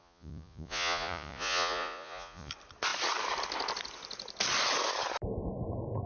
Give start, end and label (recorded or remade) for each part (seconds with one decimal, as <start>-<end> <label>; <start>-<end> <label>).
0.0-2.5 remade; 2.5-6.1 recorded